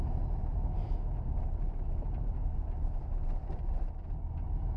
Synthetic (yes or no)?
no